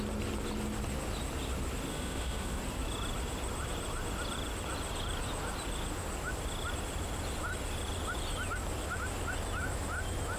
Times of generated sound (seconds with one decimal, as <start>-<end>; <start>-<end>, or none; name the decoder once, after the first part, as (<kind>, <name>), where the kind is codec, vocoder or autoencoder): 1.9-2.6 (autoencoder, DAC-VAE)